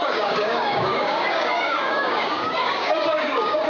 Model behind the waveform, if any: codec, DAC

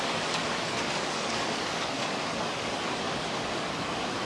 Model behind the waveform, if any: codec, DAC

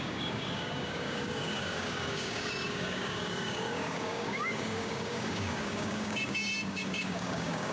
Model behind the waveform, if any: codec, DAC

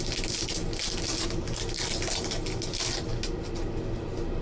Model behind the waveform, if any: none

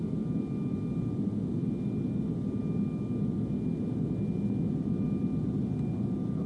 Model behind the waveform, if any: none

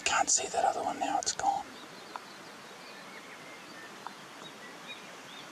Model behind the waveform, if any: none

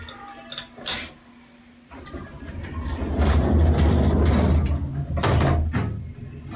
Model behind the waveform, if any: none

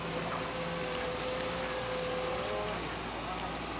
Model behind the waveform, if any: none